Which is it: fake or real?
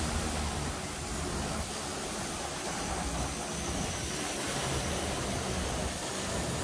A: real